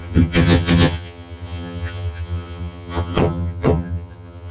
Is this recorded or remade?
remade